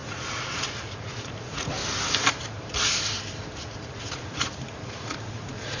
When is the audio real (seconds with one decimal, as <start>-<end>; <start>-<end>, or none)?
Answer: 1.8-3.5